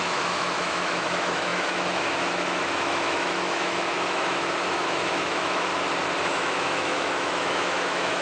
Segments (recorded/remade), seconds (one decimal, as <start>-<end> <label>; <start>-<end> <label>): 0.0-5.7 remade; 5.7-6.2 recorded; 6.2-8.2 remade